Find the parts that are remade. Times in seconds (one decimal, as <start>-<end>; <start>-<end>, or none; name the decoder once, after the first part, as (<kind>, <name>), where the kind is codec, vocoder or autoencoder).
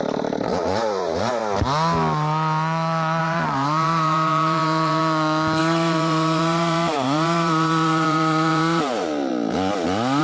0.0-1.4 (vocoder, BigVGAN v2); 3.2-5.0; 5.6-9.3